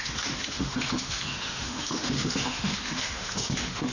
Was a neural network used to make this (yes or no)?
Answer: yes